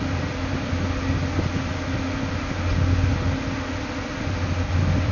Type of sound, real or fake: real